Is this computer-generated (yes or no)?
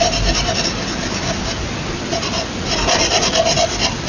no